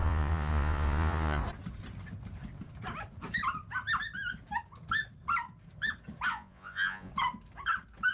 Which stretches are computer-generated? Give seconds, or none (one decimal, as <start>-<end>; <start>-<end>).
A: 0.0-1.4; 6.3-7.1

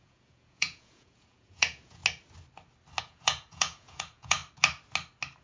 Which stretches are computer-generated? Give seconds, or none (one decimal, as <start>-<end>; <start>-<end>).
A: 0.0-2.0; 3.0-4.4

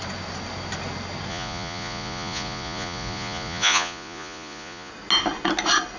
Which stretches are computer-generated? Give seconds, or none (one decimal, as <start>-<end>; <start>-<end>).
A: 1.3-4.9

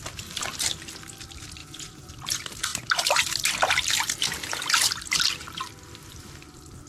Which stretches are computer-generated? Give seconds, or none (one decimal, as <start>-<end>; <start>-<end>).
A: 1.6-2.1